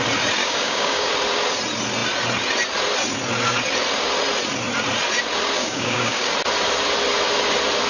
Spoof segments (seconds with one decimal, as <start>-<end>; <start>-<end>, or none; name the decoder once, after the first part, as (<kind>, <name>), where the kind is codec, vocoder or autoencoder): 0.4-1.1 (codec, DAC); 5.6-6.3